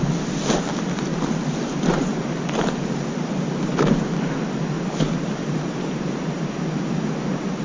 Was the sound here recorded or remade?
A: recorded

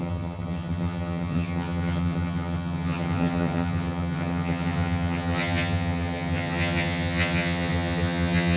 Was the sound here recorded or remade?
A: remade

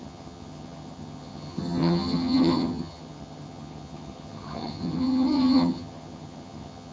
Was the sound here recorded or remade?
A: remade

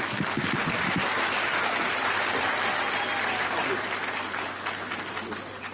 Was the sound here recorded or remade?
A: recorded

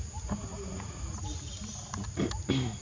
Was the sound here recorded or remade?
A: recorded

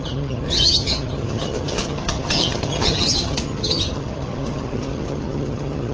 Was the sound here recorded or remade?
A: remade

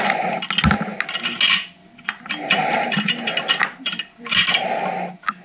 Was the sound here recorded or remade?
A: recorded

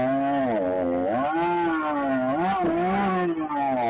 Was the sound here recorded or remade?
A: recorded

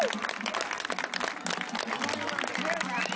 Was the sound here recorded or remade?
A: recorded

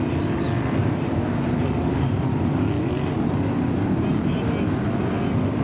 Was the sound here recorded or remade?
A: recorded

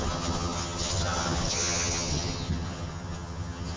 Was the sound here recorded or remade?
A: remade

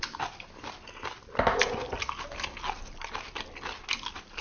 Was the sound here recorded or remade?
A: recorded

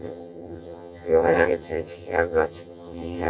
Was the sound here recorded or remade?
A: remade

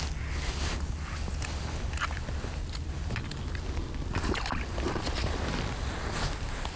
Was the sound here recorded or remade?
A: recorded